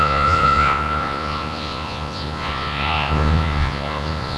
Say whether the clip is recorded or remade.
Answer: remade